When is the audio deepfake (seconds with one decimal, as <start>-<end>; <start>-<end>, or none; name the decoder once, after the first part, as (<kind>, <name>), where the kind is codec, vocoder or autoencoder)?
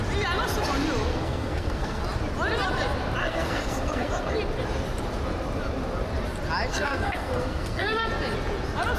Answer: 1.1-2.0 (codec, SNAC); 3.2-4.3; 6.7-8.1